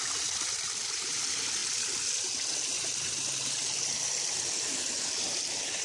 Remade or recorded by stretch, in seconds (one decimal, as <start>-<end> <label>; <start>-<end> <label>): 0.0-5.8 recorded